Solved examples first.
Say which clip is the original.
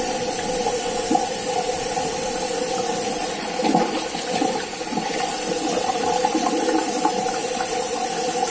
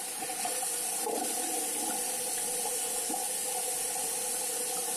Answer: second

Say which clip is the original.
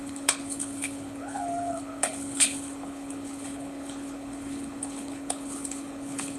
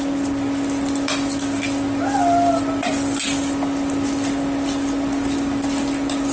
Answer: second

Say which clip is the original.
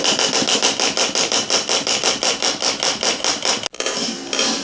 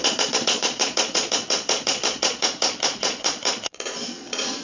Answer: first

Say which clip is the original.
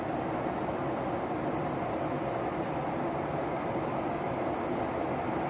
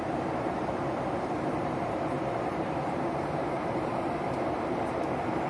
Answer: first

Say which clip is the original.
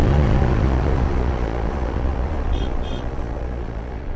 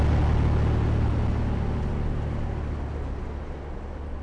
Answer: second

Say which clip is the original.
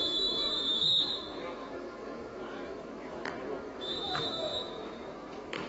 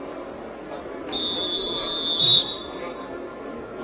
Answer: second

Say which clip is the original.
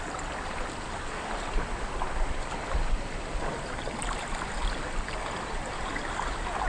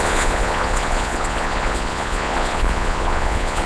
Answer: first